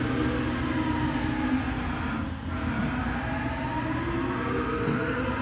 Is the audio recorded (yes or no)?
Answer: yes